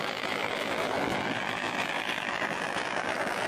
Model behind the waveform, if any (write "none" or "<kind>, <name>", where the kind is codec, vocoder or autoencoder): vocoder, BigVGAN v2